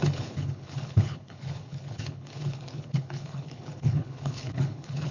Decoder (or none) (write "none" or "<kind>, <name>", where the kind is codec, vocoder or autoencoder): codec, HILCodec